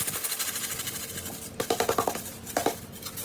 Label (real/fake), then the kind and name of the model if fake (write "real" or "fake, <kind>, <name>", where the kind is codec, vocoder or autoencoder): real